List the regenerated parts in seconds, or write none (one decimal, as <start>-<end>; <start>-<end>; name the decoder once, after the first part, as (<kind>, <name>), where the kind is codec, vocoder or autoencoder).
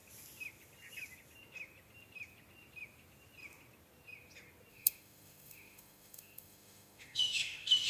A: 4.7-7.9 (autoencoder, DAC-VAE)